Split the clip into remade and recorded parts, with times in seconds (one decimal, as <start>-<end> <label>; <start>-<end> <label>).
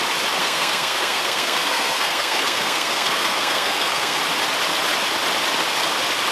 0.0-0.4 recorded; 0.4-4.2 remade; 4.2-6.3 recorded